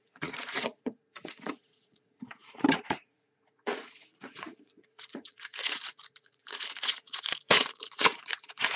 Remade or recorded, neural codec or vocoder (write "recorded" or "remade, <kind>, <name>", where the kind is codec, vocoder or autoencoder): remade, vocoder, Vocos